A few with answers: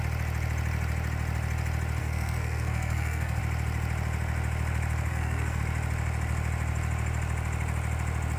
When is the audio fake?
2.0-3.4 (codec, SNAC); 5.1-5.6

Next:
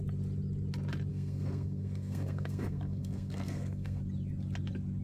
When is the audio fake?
1.1-4.0 (codec, SNAC)

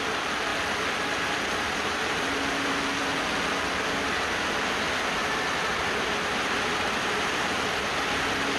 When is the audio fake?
none